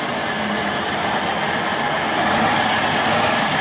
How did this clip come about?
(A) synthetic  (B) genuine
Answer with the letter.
B